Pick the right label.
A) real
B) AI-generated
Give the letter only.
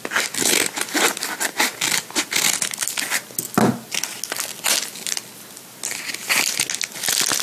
A